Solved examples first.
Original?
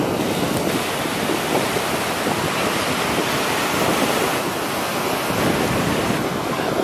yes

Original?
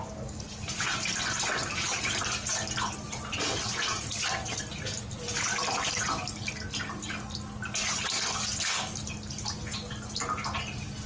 yes